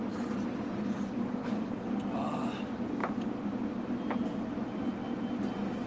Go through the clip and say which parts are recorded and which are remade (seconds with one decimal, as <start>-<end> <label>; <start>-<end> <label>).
0.0-1.4 recorded; 1.4-2.0 remade; 2.0-5.9 recorded